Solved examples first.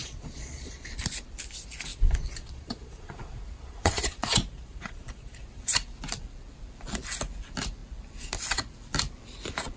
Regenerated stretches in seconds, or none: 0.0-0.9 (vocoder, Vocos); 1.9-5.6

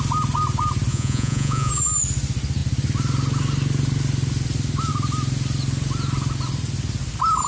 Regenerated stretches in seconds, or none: 0.9-1.7 (vocoder, Vocos)

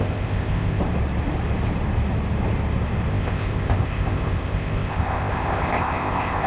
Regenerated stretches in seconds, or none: 0.0-0.8 (codec, ZipCodec); 3.1-6.5

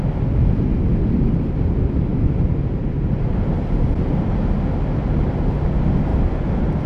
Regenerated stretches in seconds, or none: none

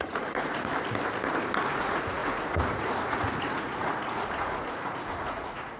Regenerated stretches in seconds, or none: 0.0-0.7 (vocoder, Vocos); 1.7-5.8

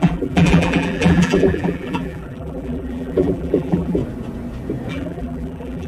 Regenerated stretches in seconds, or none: 0.0-4.0 (vocoder, BigVGAN v2); 4.9-5.9

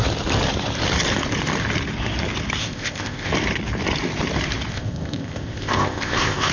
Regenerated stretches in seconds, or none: 2.6-3.3 (codec, ZipCodec); 4.7-6.5

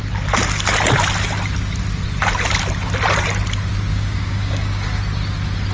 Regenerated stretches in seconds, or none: 3.9-5.0 (codec, DAC)